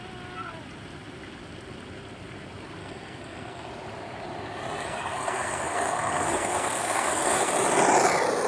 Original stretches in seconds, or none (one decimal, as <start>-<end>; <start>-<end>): 0.0-2.8; 3.7-4.8; 7.5-8.5